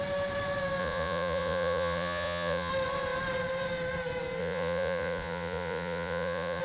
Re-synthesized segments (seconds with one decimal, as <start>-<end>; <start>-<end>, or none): 0.8-2.7; 4.4-6.6

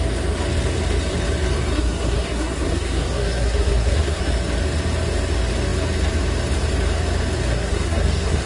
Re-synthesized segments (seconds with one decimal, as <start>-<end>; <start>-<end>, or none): 1.7-4.2; 7.5-8.5